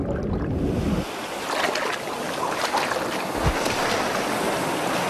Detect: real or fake real